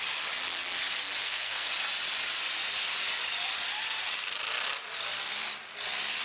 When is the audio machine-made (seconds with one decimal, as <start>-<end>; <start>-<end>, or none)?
1.2-1.7

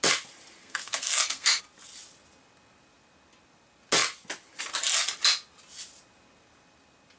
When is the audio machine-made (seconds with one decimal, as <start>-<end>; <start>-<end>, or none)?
0.6-1.6

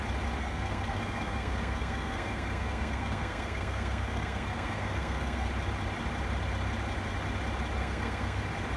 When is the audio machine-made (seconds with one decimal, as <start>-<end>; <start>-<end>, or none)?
0.4-5.5; 7.8-8.4

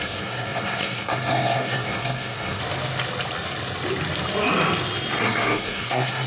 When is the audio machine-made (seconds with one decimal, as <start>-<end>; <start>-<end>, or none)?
0.0-2.6; 5.2-6.3